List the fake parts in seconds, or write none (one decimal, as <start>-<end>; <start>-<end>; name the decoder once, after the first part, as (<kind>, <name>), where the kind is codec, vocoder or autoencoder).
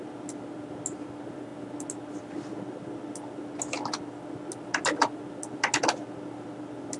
none